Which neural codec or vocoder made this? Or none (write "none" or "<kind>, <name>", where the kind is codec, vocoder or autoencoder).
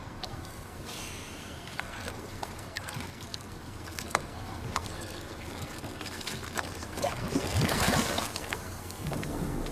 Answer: codec, SNAC